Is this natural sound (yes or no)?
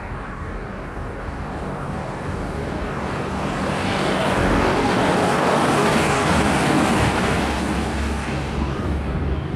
no